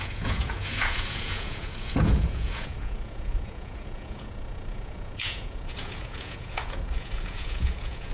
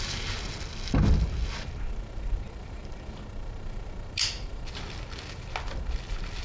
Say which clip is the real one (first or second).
second